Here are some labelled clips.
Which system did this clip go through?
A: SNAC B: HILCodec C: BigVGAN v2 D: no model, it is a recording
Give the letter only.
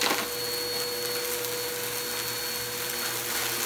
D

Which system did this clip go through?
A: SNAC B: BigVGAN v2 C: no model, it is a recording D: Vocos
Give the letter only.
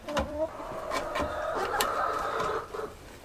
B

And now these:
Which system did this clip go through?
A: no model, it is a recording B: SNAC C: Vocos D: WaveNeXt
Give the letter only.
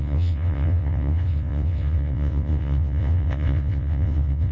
D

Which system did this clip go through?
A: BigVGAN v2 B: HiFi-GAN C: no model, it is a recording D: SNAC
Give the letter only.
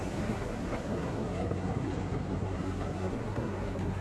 D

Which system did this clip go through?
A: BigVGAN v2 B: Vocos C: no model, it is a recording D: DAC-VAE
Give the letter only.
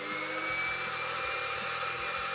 C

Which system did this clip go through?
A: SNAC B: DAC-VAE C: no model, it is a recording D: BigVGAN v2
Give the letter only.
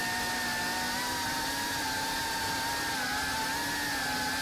C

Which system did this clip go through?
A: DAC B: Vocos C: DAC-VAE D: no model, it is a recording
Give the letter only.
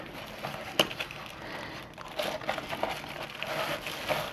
D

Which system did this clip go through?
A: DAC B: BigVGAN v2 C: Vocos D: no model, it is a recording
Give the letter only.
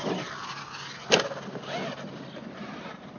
D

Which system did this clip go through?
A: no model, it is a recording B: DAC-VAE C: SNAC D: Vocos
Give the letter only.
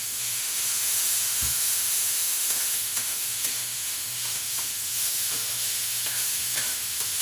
B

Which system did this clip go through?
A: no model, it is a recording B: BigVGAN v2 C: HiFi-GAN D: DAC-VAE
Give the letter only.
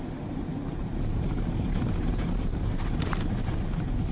B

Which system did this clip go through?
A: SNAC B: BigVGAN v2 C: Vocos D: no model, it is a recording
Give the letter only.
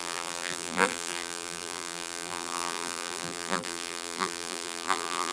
B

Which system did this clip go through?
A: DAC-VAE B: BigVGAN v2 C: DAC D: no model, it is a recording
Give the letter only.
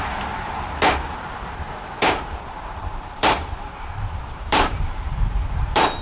B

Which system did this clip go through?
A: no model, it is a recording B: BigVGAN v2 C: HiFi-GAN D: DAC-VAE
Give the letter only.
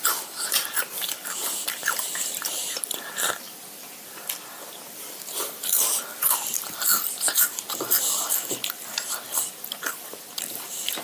B